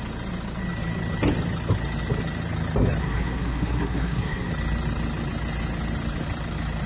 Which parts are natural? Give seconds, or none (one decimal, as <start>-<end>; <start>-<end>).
0.0-3.0; 4.5-6.9